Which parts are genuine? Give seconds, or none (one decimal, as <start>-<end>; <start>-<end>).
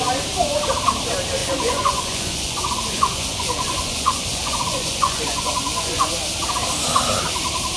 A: 0.0-1.4; 6.1-7.8